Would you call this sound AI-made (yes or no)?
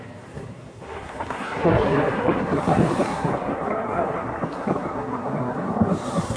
yes